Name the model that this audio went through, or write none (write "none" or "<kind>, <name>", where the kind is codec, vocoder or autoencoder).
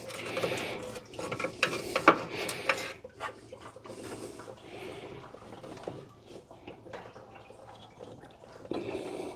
none